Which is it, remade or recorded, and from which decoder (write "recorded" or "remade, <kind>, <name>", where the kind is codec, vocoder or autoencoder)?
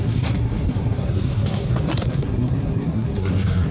remade, codec, SNAC